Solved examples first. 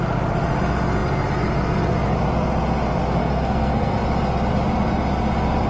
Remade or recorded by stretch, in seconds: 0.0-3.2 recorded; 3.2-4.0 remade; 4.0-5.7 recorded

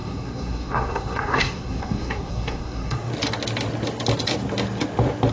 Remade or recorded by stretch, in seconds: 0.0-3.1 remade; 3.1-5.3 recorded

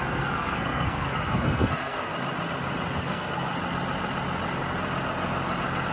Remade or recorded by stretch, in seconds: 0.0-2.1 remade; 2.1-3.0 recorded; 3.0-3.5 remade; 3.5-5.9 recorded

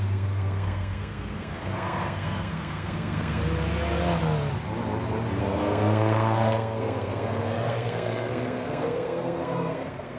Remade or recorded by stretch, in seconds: 0.0-3.4 remade; 3.4-5.4 recorded; 5.4-10.2 remade

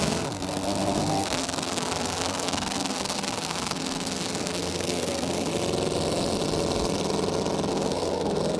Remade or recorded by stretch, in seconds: 0.0-5.5 remade; 5.5-7.7 recorded; 7.7-8.6 remade